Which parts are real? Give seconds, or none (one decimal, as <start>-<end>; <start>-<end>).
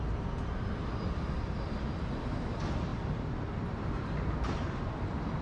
0.0-5.4